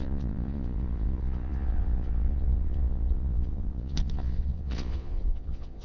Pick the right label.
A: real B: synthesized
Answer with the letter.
B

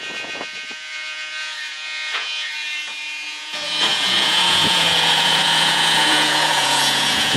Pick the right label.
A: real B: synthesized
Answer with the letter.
B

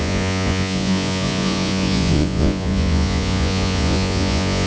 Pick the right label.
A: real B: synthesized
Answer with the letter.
B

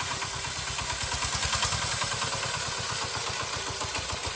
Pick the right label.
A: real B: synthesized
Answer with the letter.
A